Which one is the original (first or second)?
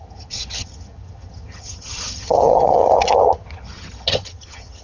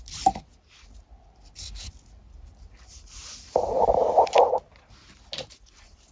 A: second